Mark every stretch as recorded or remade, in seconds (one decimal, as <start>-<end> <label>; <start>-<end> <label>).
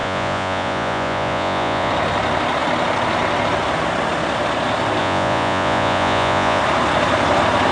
0.0-1.9 remade; 1.9-5.0 recorded; 5.0-6.6 remade; 6.6-7.7 recorded